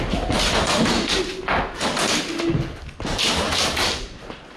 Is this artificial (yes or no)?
no